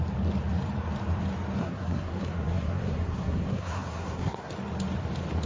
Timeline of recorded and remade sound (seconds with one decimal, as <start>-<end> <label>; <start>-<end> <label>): 0.0-1.6 recorded; 1.6-4.5 remade; 4.5-5.5 recorded